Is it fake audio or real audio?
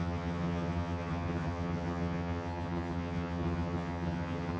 fake